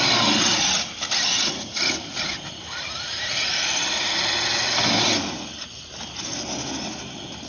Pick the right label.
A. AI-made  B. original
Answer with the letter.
B